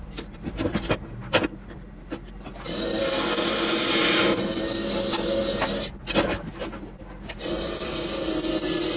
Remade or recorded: recorded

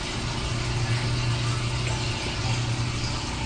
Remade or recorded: recorded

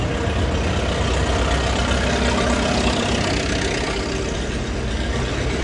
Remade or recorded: recorded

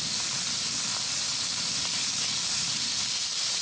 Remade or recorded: recorded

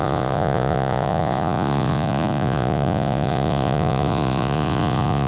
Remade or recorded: remade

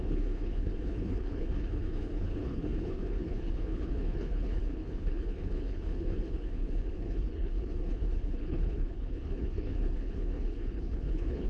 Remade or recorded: remade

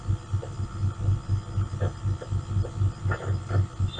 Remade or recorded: recorded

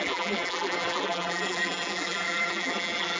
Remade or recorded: remade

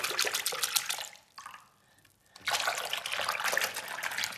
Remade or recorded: recorded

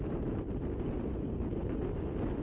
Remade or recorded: recorded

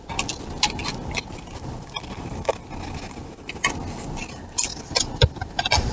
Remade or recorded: recorded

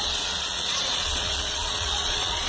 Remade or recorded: remade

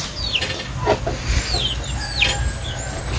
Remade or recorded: recorded